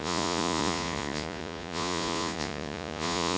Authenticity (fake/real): fake